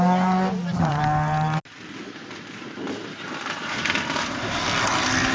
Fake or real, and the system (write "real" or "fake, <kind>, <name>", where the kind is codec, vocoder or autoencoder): real